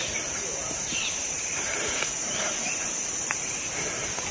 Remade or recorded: remade